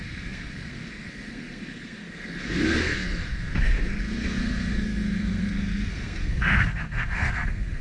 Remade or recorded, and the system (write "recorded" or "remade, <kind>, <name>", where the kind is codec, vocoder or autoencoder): remade, codec, SNAC